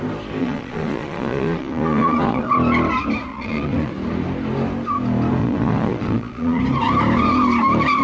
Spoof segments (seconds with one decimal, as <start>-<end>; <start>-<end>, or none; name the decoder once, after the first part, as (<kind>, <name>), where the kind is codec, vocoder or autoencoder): 0.4-2.5 (vocoder, Vocos); 3.3-3.9; 5.4-6.6